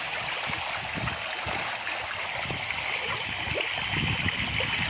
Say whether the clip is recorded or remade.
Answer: recorded